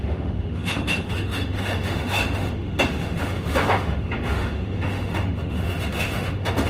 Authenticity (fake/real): fake